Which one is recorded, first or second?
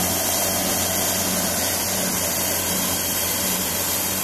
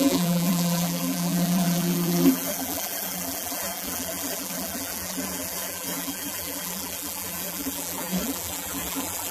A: first